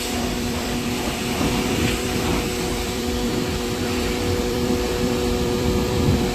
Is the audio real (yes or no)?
no